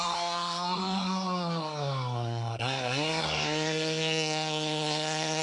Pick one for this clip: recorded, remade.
remade